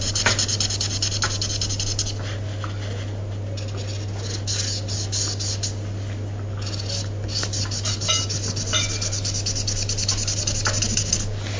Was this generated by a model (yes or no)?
no